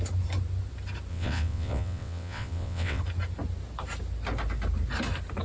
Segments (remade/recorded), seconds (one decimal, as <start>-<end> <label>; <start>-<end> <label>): 0.0-1.1 recorded; 1.1-3.0 remade; 3.0-5.4 recorded